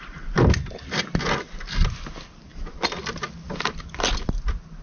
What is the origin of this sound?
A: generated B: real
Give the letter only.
B